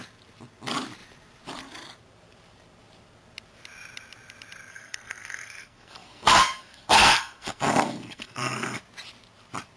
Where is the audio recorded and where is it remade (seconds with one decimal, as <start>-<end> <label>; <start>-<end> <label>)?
0.0-4.7 recorded; 4.7-8.8 remade; 8.8-9.8 recorded